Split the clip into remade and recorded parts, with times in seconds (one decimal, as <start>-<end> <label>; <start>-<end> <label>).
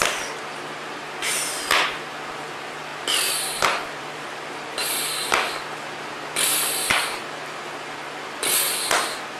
0.0-9.4 recorded